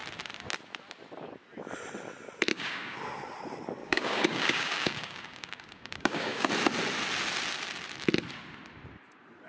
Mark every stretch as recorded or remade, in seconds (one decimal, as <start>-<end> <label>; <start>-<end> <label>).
0.0-2.5 recorded; 2.5-3.0 remade; 3.0-3.8 recorded; 3.8-6.5 remade; 6.5-9.5 recorded

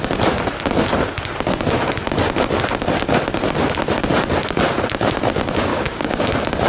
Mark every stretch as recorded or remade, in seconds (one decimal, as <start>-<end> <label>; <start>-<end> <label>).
0.0-5.7 recorded; 5.7-6.2 remade; 6.2-6.7 recorded

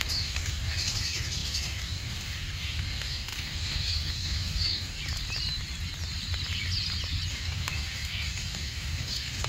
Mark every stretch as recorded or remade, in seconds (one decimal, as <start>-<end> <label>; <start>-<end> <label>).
0.0-5.0 remade; 5.0-7.3 recorded; 7.3-9.5 remade

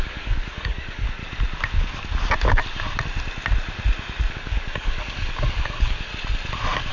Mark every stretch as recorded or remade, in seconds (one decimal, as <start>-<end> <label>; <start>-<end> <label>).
0.0-1.2 remade; 1.2-4.3 recorded; 4.3-6.1 remade; 6.1-6.9 recorded

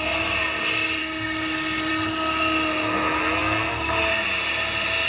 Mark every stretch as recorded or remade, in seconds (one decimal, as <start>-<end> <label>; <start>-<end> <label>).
0.0-1.0 recorded; 1.0-1.9 remade; 1.9-5.1 recorded

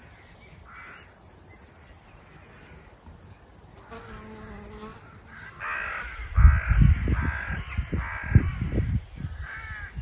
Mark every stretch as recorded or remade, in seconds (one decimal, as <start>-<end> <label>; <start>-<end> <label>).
0.0-10.0 recorded

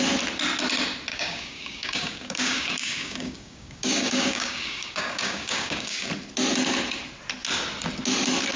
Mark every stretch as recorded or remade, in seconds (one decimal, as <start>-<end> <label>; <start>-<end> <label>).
0.0-1.1 recorded; 1.1-6.1 remade; 6.1-8.6 recorded